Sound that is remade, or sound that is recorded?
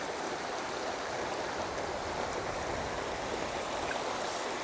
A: recorded